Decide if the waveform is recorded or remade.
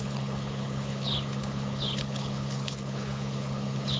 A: remade